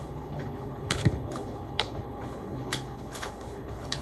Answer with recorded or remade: remade